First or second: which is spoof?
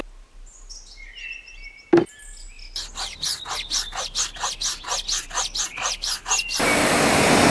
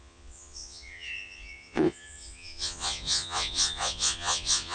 second